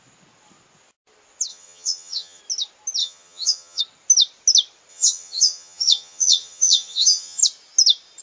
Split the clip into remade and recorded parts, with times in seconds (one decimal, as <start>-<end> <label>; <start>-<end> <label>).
0.0-1.5 recorded; 1.5-2.4 remade; 2.4-3.0 recorded; 3.0-3.8 remade; 3.8-4.9 recorded; 4.9-7.4 remade; 7.4-8.2 recorded